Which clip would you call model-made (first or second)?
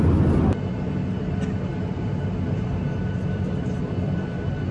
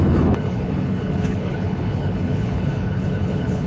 second